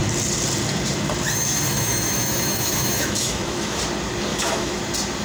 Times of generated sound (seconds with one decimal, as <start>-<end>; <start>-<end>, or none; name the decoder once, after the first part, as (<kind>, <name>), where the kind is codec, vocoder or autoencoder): 1.7-3.8 (autoencoder, DAC-VAE); 4.3-4.8